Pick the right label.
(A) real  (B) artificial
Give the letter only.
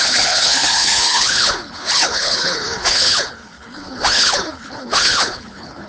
B